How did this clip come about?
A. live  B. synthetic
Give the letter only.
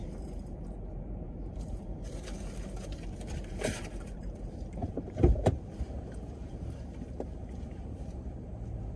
B